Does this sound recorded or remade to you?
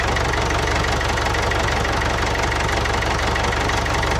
recorded